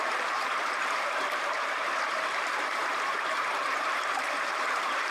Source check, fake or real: fake